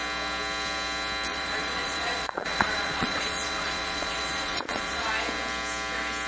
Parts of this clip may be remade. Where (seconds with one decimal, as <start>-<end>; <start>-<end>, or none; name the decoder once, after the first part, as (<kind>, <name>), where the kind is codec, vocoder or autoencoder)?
1.3-5.1 (vocoder, Vocos)